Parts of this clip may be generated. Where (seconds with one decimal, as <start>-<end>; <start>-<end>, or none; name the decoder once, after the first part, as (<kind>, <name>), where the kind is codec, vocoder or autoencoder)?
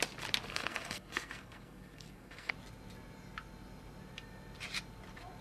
0.5-2.5 (codec, SNAC)